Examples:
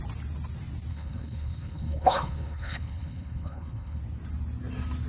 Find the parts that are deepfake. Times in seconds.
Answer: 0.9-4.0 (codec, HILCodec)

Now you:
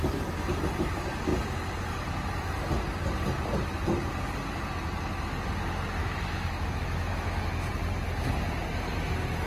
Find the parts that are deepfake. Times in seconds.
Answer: 6.0-7.4 (autoencoder, DAC-VAE)

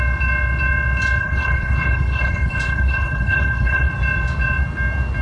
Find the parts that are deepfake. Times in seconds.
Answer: 1.2-3.9 (codec, HILCodec)

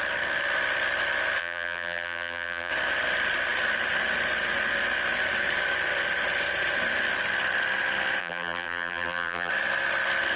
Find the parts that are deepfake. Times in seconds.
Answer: 1.4-2.7 (vocoder, BigVGAN v2); 8.2-9.5

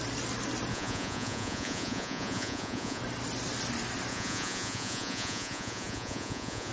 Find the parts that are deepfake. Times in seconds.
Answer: 0.7-3.0 (vocoder, Vocos); 4.1-6.7

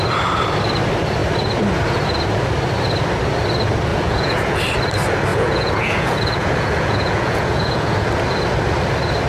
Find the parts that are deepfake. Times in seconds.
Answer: 3.9-4.6 (vocoder, Vocos); 5.3-8.1

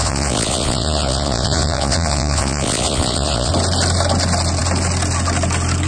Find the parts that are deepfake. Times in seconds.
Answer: 0.0-3.5 (vocoder, Vocos)